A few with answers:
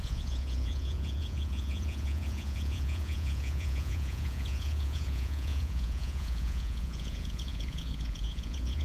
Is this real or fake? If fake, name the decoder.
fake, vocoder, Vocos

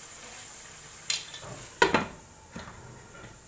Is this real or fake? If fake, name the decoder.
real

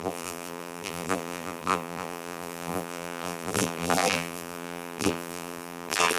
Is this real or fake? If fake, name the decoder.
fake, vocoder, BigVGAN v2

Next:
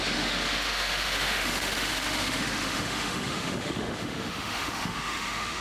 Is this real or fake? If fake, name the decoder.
fake, autoencoder, DAC-VAE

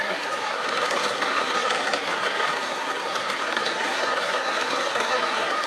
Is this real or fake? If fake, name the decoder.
fake, codec, SNAC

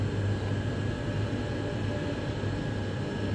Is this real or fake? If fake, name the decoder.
real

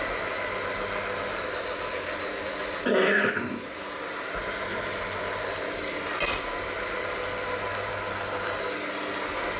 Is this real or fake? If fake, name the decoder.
real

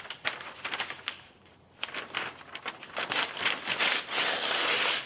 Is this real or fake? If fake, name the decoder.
real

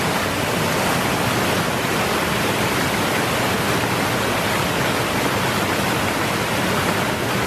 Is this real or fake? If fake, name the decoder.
real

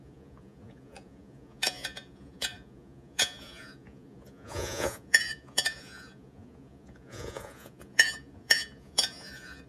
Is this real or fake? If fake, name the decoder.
fake, vocoder, Vocos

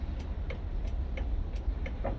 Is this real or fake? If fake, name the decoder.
real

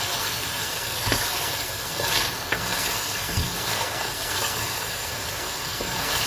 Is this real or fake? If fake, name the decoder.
fake, codec, SNAC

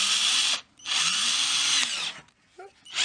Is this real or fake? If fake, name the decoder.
real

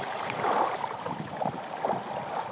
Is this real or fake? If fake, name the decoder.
real